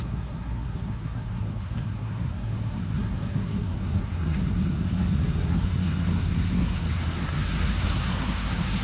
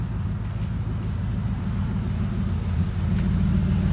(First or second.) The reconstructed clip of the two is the first